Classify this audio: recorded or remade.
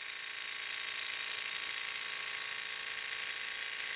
recorded